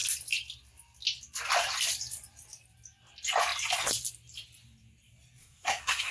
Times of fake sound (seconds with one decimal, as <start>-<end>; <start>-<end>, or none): 5.4-6.1